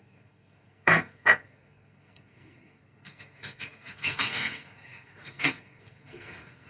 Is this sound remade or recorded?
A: remade